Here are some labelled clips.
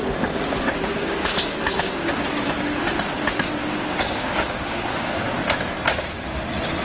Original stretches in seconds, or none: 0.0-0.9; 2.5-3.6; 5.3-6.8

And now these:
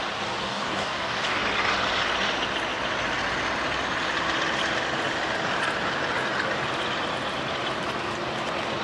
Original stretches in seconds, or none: 0.0-0.4; 1.4-8.8